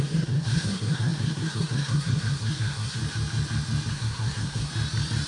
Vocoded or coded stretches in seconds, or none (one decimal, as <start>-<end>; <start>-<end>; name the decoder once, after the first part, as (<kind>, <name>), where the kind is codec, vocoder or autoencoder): 0.0-3.0 (codec, SNAC); 3.9-4.7